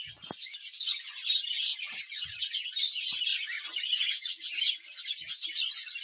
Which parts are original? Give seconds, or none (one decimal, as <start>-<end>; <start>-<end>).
0.0-1.7; 2.4-3.3; 4.3-6.0